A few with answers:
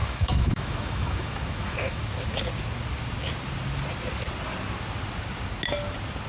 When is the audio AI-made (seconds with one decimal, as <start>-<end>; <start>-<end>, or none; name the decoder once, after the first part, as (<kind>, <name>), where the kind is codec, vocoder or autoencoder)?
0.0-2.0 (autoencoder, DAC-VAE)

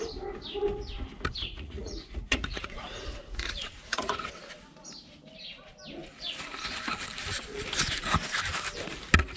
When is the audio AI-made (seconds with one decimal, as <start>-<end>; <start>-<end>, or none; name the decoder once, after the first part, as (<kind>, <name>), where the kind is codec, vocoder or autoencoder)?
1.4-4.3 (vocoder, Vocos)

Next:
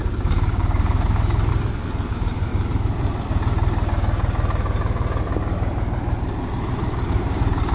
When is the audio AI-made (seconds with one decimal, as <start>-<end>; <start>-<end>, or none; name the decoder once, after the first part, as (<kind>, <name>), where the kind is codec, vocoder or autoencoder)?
0.0-1.5 (codec, DAC); 2.1-2.5; 7.1-7.7

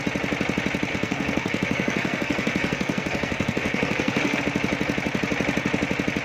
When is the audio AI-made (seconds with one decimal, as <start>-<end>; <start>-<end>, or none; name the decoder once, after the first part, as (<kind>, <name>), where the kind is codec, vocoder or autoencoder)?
0.9-4.4 (codec, SNAC)

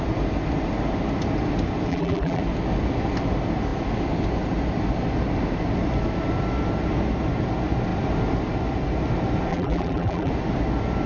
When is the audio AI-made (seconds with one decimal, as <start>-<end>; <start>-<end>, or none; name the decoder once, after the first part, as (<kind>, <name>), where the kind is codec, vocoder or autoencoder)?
1.9-2.4 (vocoder, BigVGAN v2); 9.5-10.3

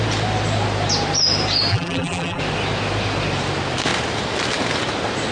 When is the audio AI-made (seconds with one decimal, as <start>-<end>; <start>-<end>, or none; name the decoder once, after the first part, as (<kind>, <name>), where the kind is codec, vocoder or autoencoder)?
1.7-2.4 (vocoder, BigVGAN v2)